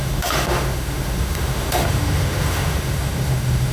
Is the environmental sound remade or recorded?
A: remade